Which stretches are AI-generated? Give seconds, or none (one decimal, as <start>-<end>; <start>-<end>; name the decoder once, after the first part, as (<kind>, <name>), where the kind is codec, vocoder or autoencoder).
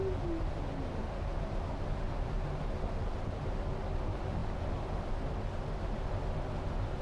none